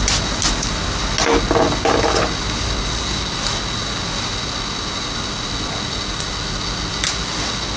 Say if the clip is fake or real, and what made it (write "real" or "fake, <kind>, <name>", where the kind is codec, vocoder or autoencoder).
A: real